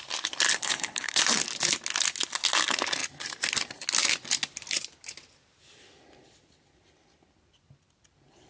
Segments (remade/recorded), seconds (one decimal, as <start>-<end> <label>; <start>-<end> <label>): 0.0-0.5 recorded; 0.5-1.2 remade; 1.2-8.5 recorded